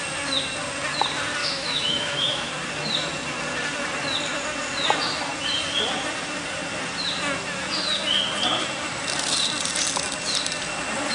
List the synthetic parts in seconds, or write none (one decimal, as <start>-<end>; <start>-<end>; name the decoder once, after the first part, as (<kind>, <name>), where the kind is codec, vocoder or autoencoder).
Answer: 1.4-2.5 (autoencoder, DAC-VAE)